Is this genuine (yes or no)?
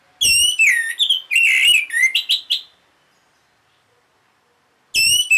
yes